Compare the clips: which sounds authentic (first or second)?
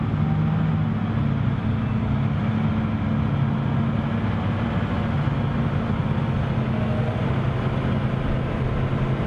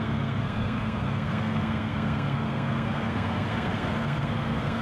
first